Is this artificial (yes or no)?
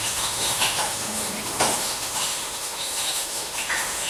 yes